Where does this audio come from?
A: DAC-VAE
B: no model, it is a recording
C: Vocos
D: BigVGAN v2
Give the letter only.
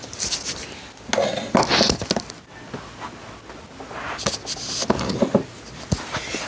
B